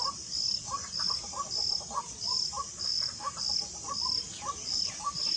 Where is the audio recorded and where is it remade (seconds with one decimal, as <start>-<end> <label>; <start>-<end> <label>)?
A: 0.0-2.9 recorded; 2.9-4.9 remade; 4.9-5.4 recorded